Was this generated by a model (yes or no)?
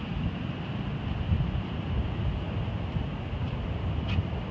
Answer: no